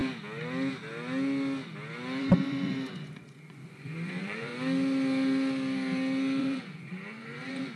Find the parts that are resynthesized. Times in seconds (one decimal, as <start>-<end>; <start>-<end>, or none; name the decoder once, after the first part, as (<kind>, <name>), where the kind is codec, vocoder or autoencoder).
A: 2.2-4.5 (vocoder, Vocos); 6.4-7.8